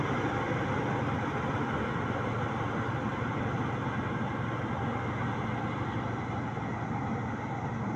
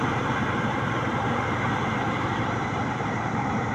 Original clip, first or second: first